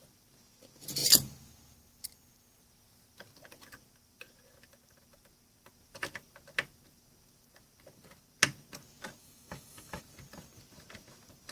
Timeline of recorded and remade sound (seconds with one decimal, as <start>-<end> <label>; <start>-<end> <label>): 0.0-9.2 recorded; 9.2-10.0 remade; 10.0-11.5 recorded